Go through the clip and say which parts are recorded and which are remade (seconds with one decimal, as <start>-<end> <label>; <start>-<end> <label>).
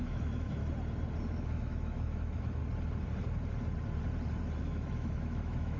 0.0-0.6 remade; 0.6-1.3 recorded; 1.3-2.6 remade; 2.6-4.6 recorded; 4.6-5.8 remade